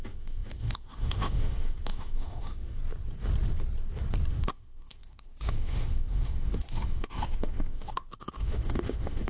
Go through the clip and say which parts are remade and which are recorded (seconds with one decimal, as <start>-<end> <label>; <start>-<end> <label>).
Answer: 0.0-2.8 remade; 2.8-4.3 recorded; 4.3-9.3 remade